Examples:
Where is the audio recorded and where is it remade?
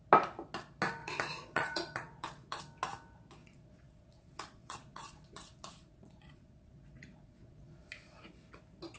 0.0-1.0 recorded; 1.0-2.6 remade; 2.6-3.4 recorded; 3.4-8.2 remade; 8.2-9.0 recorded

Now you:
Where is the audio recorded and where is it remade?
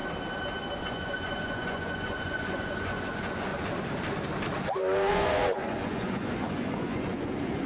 0.0-0.8 recorded; 0.8-3.5 remade; 3.5-5.1 recorded; 5.1-7.7 remade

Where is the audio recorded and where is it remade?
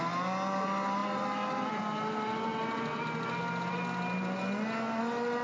0.0-5.4 recorded